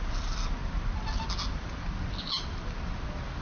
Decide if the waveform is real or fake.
real